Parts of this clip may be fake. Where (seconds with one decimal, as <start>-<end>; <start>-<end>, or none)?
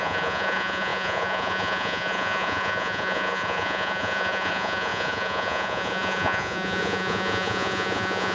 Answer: 0.0-8.3